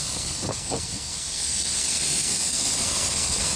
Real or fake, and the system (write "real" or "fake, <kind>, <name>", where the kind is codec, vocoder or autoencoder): fake, codec, SNAC